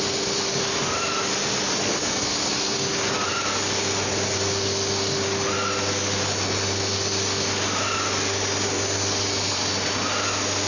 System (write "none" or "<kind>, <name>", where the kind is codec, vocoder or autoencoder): none